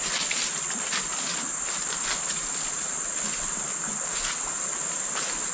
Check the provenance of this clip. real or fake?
real